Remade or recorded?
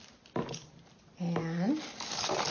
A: recorded